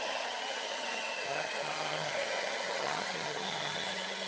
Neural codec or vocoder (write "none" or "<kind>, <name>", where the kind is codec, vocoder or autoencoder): vocoder, HiFi-GAN